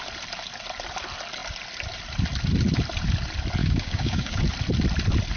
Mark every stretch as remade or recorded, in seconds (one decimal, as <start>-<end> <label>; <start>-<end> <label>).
0.0-3.6 recorded; 3.6-4.4 remade; 4.4-5.4 recorded